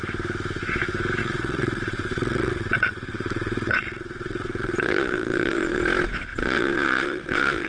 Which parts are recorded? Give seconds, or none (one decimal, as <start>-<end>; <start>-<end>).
0.0-1.2; 5.8-6.3